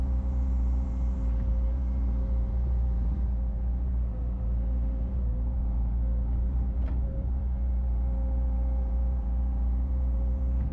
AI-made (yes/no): yes